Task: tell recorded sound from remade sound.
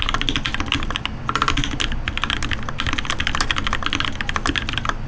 recorded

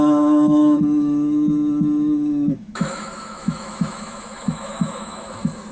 remade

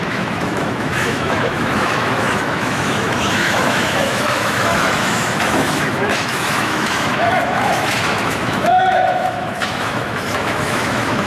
remade